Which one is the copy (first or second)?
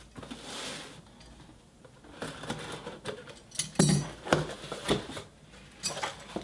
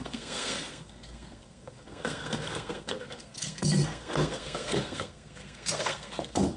second